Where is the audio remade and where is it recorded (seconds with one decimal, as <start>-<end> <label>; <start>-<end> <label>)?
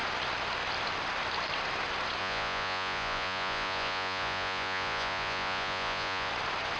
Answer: 0.0-2.2 recorded; 2.2-6.3 remade; 6.3-6.8 recorded